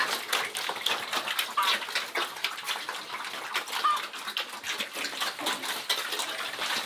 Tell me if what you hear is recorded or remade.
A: recorded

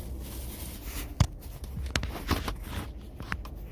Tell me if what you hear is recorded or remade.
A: recorded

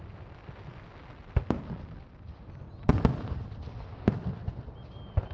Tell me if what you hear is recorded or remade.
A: recorded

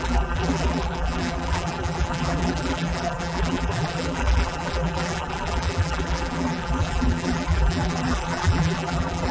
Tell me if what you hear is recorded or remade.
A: remade